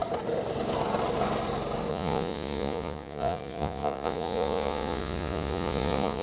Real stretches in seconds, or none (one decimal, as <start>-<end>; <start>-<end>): 0.0-1.9